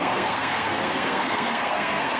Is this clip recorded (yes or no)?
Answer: no